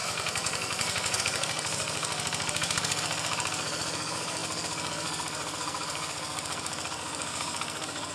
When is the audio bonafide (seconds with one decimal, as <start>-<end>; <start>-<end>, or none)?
none